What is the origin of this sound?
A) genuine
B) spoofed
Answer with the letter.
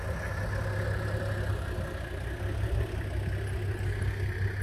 A